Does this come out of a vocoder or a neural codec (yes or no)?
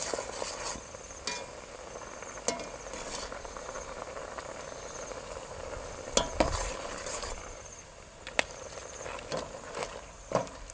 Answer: no